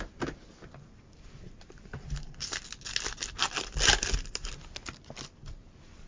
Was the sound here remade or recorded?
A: recorded